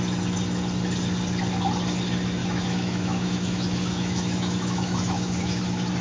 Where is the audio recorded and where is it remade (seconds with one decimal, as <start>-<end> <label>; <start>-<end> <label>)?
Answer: 0.0-2.4 recorded; 2.4-5.6 remade; 5.6-6.0 recorded